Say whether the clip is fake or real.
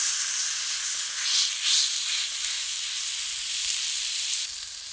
real